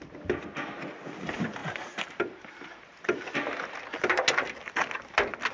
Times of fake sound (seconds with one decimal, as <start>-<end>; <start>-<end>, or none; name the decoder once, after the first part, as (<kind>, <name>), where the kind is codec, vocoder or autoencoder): none